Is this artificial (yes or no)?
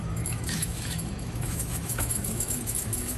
yes